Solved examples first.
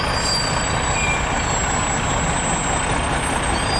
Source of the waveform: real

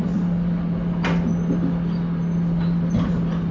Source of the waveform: real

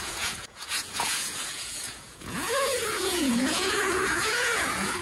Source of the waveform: fake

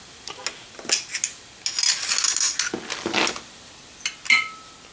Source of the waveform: real